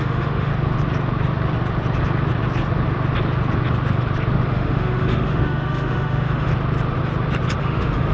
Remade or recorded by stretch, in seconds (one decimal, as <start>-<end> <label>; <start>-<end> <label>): 0.0-0.5 remade; 0.5-4.5 recorded; 4.5-6.5 remade; 6.5-7.6 recorded; 7.6-8.1 remade